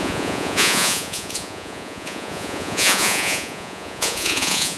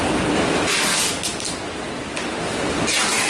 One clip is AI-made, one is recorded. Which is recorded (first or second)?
second